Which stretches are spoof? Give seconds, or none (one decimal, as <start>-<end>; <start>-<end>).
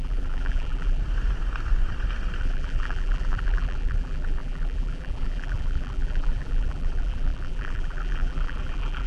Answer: 0.0-1.0; 2.4-9.1